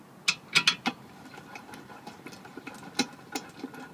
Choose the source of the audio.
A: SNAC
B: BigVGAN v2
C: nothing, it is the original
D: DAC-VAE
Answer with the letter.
C